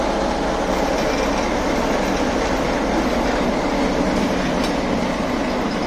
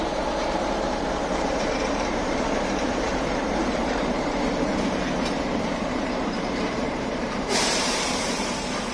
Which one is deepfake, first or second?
second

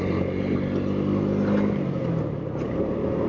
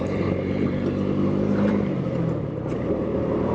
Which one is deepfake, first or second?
second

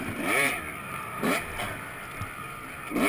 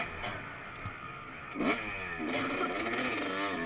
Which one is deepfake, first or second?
first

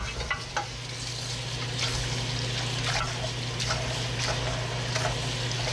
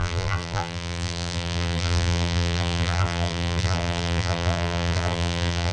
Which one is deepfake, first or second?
second